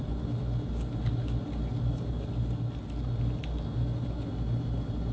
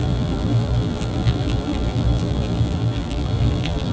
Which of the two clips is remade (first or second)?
second